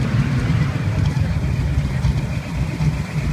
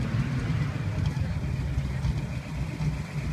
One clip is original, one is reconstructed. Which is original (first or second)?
second